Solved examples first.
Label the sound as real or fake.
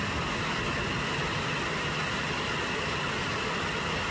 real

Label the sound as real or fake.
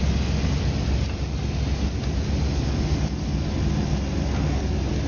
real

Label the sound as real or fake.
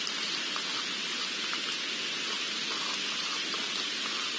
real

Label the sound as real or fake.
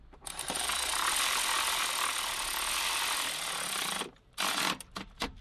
real